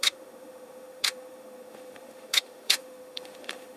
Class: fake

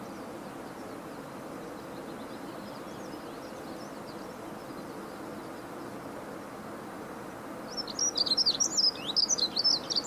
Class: real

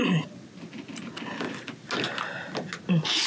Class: real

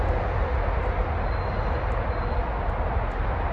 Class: real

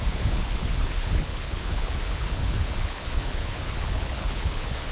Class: fake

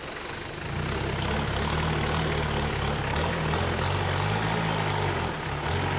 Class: real